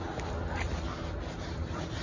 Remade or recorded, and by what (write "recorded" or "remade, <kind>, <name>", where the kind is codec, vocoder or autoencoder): recorded